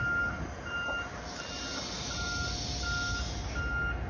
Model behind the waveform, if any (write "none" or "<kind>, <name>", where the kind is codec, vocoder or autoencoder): none